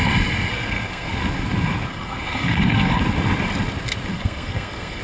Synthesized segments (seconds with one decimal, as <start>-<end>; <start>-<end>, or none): 0.5-1.2; 1.9-3.0; 4.1-5.0